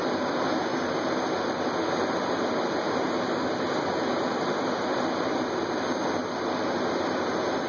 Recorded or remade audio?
recorded